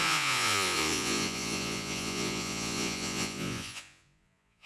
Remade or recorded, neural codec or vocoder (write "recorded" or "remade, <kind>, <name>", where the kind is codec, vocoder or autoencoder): remade, vocoder, Vocos